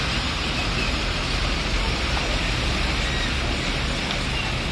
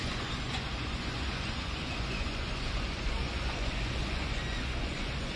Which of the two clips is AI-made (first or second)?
second